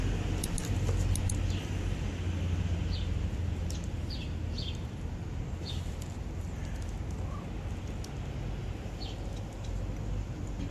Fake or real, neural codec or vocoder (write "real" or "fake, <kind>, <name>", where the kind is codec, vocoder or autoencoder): real